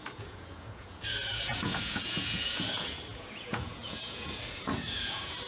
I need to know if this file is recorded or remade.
remade